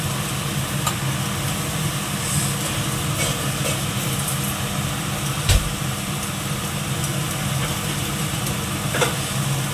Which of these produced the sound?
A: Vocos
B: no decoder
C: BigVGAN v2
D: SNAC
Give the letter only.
B